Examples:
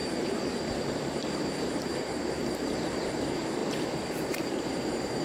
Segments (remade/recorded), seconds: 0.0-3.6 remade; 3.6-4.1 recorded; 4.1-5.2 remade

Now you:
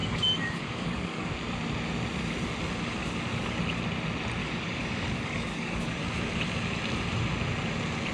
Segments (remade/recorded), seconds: 0.0-1.3 remade; 1.3-3.0 recorded; 3.0-3.8 remade; 3.8-4.4 recorded; 4.4-6.0 remade; 6.0-8.1 recorded

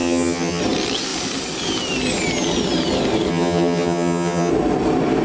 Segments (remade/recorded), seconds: 0.0-0.6 remade; 0.6-3.3 recorded; 3.3-4.5 remade; 4.5-5.2 recorded

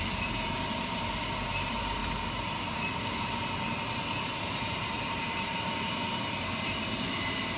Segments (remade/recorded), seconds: 0.0-2.0 remade; 2.0-4.2 recorded; 4.2-7.6 remade

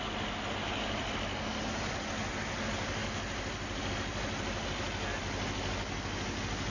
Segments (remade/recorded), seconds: 0.0-6.7 recorded